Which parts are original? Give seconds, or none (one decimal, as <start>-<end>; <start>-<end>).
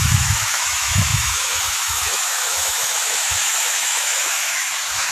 none